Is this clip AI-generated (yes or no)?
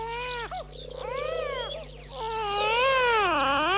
no